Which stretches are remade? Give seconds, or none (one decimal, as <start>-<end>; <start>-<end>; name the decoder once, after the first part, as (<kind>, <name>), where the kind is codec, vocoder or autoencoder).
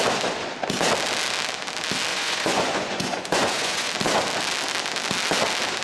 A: 2.1-3.9 (vocoder, Vocos)